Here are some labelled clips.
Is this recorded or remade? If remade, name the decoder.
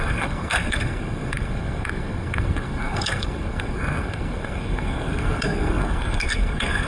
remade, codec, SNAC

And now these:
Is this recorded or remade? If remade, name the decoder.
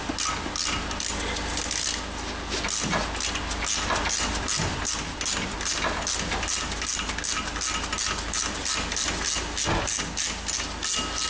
recorded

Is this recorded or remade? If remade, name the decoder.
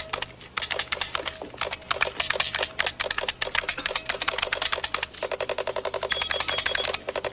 recorded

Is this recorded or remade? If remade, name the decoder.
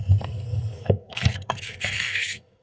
remade, codec, SNAC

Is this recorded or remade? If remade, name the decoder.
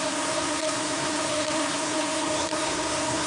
remade, codec, SNAC